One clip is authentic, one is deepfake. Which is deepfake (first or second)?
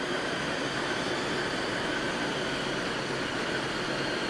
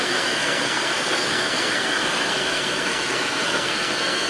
second